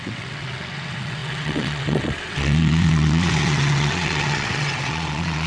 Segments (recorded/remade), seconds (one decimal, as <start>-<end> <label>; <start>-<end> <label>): 0.0-5.5 remade